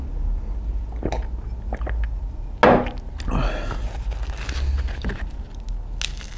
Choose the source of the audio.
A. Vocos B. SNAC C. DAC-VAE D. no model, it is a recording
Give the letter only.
D